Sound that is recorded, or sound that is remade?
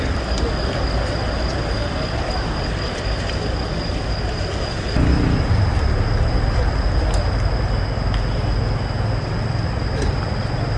recorded